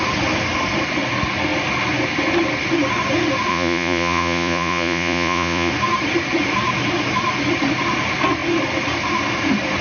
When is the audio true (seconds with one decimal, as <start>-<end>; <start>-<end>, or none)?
0.0-3.5; 5.7-9.8